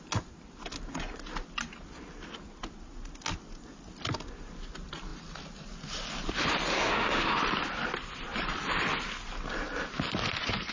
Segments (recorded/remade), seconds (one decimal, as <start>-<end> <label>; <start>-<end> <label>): 0.0-6.7 recorded; 6.7-7.4 remade; 7.4-10.7 recorded